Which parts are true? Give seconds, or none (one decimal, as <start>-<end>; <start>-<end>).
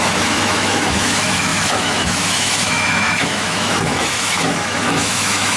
none